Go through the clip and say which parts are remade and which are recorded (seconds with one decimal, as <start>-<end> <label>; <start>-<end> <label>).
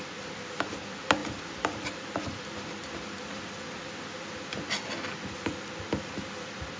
0.0-6.8 recorded